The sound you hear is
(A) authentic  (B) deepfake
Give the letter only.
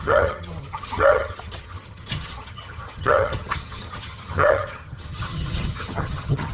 B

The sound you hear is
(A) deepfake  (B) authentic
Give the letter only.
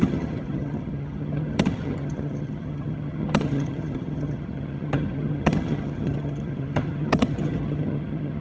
A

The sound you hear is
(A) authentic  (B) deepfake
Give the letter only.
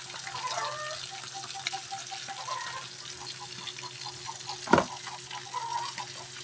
A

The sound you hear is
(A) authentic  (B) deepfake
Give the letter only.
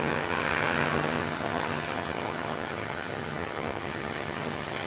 B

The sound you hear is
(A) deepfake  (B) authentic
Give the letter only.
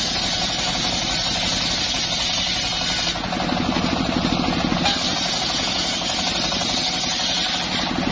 B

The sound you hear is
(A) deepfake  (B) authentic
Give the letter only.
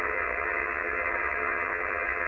A